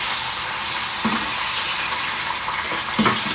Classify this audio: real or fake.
real